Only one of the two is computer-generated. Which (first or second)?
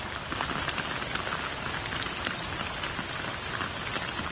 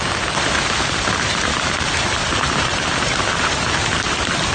second